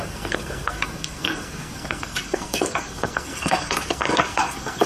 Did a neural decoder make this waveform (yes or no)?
yes